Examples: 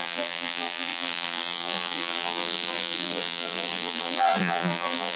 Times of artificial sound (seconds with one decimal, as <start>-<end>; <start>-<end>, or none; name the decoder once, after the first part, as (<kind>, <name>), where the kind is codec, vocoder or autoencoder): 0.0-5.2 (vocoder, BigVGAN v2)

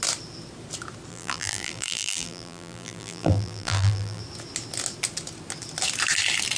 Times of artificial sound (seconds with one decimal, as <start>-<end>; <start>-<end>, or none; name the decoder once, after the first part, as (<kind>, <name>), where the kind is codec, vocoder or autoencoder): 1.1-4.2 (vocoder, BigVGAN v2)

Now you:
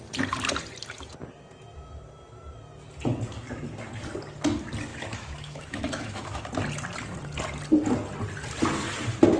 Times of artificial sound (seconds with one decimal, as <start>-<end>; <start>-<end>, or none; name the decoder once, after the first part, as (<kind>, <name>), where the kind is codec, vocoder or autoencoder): 4.9-6.4 (autoencoder, DAC-VAE)

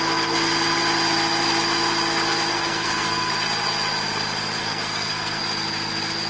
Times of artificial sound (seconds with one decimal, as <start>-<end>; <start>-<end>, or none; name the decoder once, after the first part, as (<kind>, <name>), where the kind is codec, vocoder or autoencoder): 2.5-3.3 (codec, SNAC); 4.6-5.4